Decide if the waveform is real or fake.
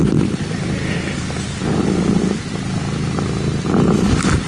real